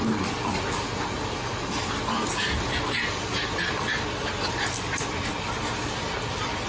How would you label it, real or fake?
real